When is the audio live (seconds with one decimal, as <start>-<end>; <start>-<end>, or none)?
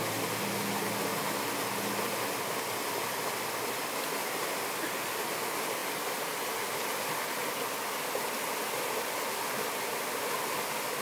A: 0.0-11.0